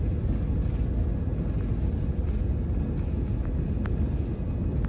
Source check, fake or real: real